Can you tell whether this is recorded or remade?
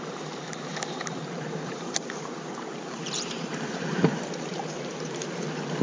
remade